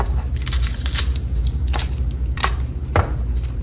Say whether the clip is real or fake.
fake